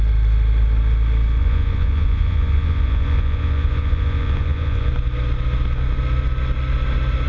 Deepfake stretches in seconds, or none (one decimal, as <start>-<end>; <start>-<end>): 1.4-4.9